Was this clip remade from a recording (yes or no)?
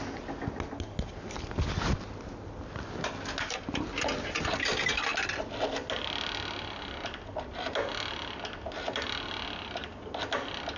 no